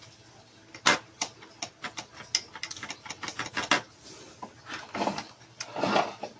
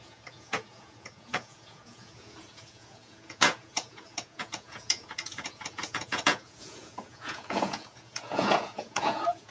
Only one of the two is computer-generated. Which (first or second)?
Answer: second